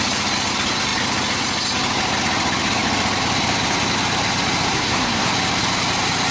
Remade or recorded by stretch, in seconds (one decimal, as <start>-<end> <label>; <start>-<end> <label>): 0.0-4.7 recorded; 4.7-5.3 remade; 5.3-6.3 recorded